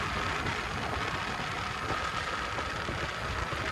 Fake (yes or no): no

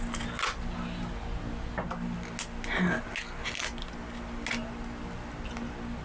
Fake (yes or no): no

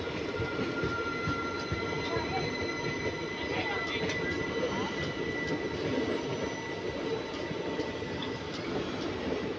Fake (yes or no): no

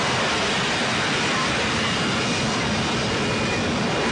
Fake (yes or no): no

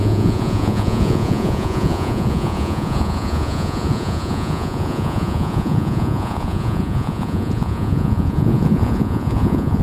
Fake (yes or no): yes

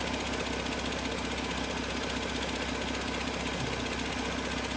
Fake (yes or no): no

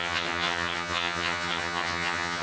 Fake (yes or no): yes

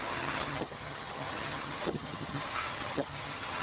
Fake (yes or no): yes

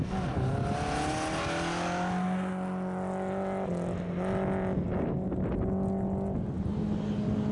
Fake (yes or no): no